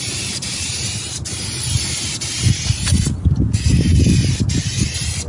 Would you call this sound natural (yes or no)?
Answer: yes